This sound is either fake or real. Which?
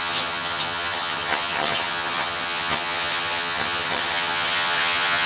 fake